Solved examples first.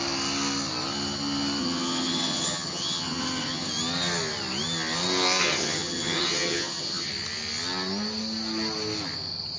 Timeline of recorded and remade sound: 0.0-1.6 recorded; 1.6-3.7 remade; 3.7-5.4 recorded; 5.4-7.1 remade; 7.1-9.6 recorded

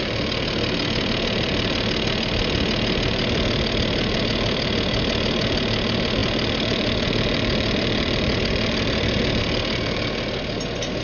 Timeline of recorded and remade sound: 0.0-11.0 recorded

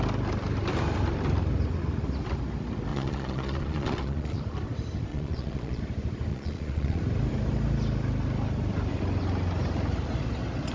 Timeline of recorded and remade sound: 0.0-2.9 recorded; 2.9-4.4 remade; 4.4-5.1 recorded; 5.1-5.8 remade; 5.8-6.3 recorded; 6.3-7.0 remade; 7.0-10.7 recorded

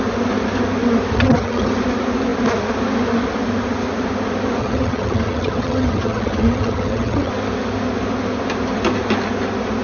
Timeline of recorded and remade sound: 0.0-1.1 recorded; 1.1-1.7 remade; 1.7-4.6 recorded; 4.6-7.3 remade; 7.3-9.8 recorded

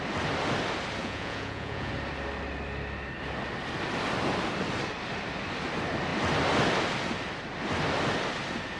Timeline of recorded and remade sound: 0.0-1.0 recorded; 1.0-1.9 remade; 1.9-8.8 recorded

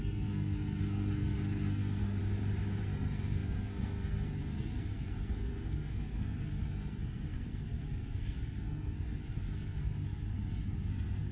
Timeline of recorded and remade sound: 0.0-2.2 remade; 2.2-2.8 recorded; 2.8-11.3 remade

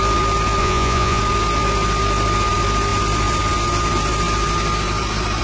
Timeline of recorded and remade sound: 0.0-0.6 recorded; 0.6-1.2 remade; 1.2-5.4 recorded